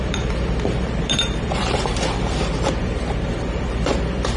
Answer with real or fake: fake